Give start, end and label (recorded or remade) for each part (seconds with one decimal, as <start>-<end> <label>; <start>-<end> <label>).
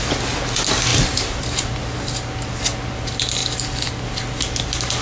0.0-0.9 recorded; 0.9-1.4 remade; 1.4-5.0 recorded